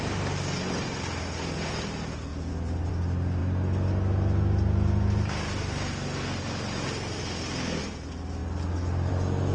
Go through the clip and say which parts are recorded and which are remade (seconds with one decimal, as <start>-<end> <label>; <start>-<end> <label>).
0.0-9.5 recorded